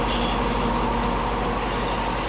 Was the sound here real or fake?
real